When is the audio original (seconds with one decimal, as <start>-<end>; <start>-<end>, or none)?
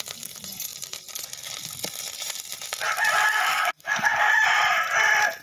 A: 0.0-3.5; 4.3-5.4